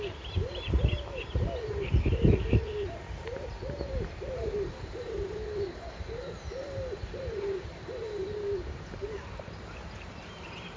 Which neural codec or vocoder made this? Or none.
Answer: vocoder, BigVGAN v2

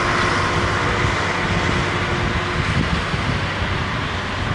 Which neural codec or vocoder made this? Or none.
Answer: none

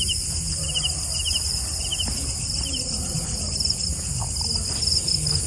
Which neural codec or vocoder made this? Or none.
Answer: none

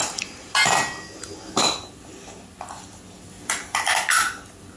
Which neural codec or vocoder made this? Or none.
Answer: none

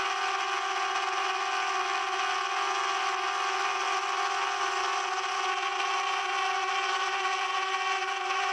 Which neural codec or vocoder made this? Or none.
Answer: none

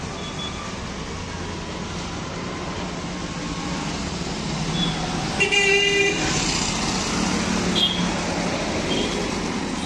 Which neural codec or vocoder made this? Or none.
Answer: none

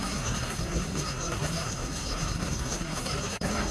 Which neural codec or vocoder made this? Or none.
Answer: codec, SNAC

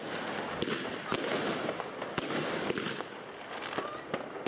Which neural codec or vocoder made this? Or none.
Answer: none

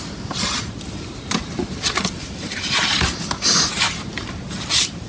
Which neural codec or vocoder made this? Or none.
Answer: vocoder, BigVGAN v2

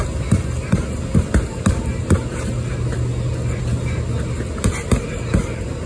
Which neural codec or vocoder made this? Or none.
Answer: none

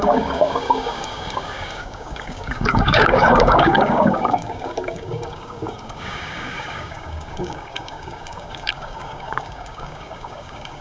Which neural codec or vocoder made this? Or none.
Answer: codec, DAC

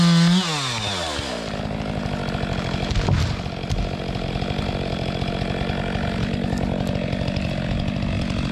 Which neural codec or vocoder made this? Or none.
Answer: none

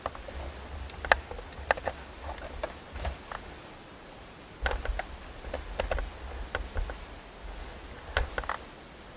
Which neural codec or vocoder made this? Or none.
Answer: none